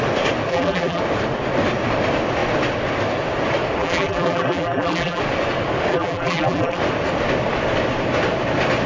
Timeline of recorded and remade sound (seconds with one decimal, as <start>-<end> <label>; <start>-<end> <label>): 0.0-0.5 recorded; 0.5-1.0 remade; 1.0-3.8 recorded; 3.8-5.2 remade; 5.2-5.9 recorded; 5.9-6.8 remade; 6.8-8.9 recorded